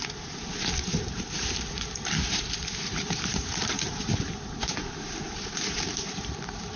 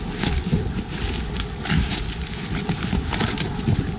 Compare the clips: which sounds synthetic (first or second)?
first